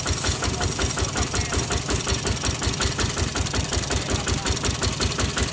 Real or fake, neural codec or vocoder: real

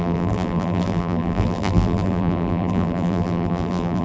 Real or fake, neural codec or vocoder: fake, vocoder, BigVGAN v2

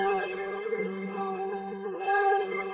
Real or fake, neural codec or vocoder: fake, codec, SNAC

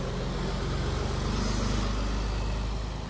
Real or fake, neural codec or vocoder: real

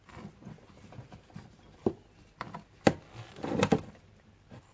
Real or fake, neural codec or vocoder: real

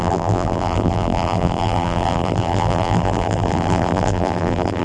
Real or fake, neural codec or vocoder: fake, vocoder, BigVGAN v2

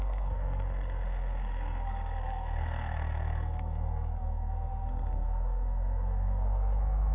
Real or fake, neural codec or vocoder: fake, codec, SNAC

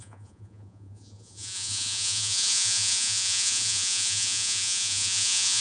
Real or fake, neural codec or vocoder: fake, vocoder, Vocos